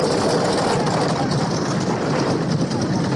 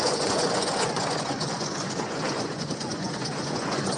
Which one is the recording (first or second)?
first